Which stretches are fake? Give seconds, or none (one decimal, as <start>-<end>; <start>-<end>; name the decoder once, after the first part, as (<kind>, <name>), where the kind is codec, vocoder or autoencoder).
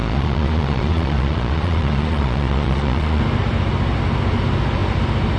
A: 0.0-3.2 (vocoder, Vocos)